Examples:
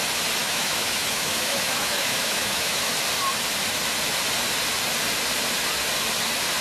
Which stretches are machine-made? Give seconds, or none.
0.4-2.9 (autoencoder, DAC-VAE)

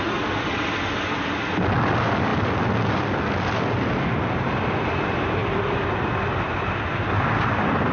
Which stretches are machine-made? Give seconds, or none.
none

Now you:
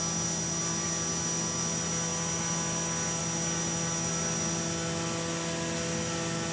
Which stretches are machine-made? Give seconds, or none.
none